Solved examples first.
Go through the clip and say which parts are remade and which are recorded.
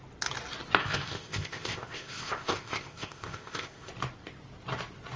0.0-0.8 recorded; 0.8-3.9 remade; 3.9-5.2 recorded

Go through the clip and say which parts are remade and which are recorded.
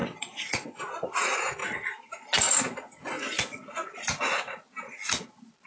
0.0-0.8 remade; 0.8-5.7 recorded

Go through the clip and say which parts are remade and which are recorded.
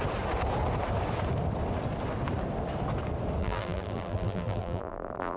0.0-3.4 recorded; 3.4-5.4 remade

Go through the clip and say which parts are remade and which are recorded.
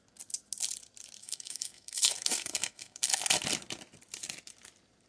0.0-1.2 recorded; 1.2-3.2 remade; 3.2-5.1 recorded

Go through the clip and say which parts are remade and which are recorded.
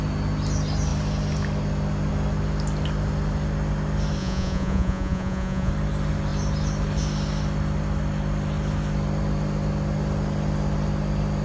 0.0-4.2 recorded; 4.2-5.7 remade; 5.7-11.4 recorded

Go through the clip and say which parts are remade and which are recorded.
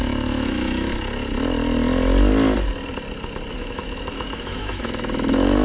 0.0-0.9 remade; 0.9-3.5 recorded; 3.5-5.6 remade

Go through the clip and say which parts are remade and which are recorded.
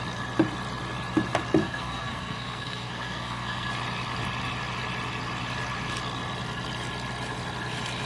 0.0-1.6 recorded; 1.6-3.7 remade; 3.7-8.1 recorded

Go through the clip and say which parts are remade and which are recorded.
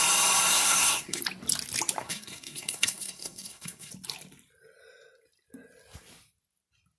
0.0-0.5 recorded; 0.5-1.2 remade; 1.2-2.0 recorded; 2.0-3.9 remade; 3.9-7.0 recorded